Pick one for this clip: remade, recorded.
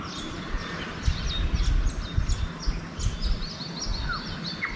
recorded